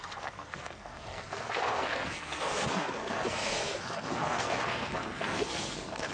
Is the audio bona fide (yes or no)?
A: no